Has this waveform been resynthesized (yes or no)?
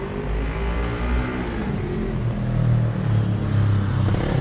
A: no